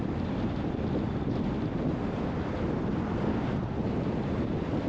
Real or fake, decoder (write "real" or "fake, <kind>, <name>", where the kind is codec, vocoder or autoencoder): real